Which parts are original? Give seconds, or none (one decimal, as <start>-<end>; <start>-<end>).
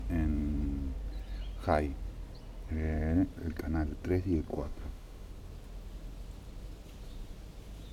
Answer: 0.0-4.5; 5.3-7.9